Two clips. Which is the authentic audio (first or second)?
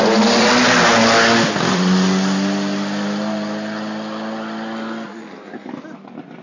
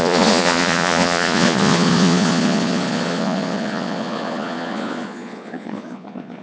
first